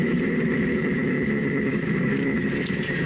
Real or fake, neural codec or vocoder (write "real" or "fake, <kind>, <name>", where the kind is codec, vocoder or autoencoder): fake, autoencoder, DAC-VAE